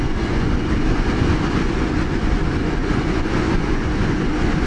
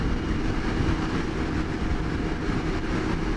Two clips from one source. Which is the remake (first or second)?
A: first